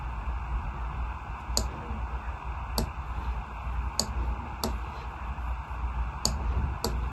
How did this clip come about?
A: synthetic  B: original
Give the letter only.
B